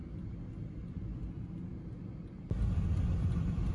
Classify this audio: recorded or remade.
recorded